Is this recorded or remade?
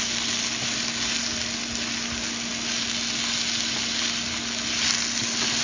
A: recorded